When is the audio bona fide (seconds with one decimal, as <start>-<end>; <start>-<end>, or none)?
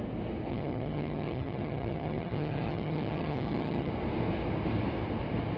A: 0.0-0.5; 3.9-5.6